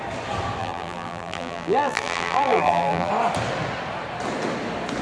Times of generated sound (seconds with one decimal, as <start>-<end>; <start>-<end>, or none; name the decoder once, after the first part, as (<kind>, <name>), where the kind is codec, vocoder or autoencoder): 0.6-3.1 (vocoder, BigVGAN v2)